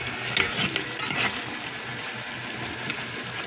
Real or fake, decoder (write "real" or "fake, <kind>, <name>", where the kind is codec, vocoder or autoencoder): real